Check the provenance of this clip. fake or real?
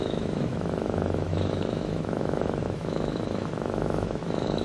fake